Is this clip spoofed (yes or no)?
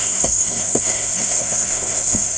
yes